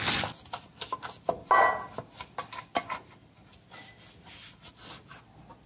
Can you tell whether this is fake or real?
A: real